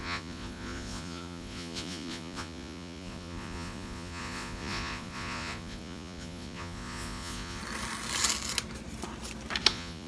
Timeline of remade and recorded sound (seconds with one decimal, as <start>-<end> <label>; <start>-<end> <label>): 0.0-7.6 remade; 7.6-9.7 recorded; 9.7-10.1 remade